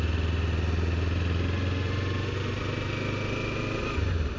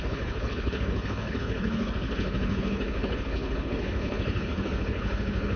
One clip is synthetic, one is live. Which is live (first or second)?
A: first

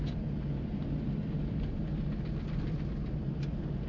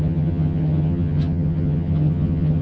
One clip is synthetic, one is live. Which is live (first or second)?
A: first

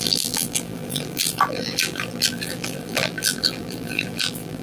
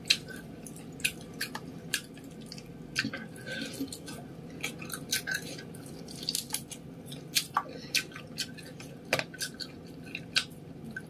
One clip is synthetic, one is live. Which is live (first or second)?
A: second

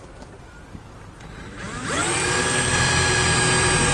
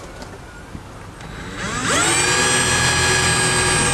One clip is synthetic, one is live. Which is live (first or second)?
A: second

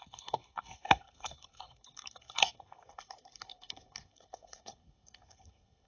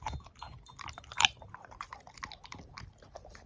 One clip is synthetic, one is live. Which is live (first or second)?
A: second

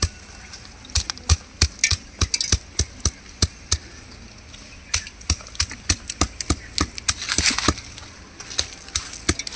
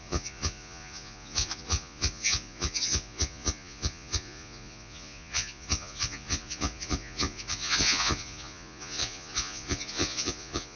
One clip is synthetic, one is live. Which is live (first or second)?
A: first